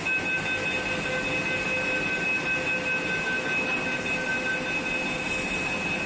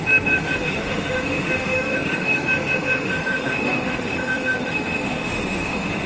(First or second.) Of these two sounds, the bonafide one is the first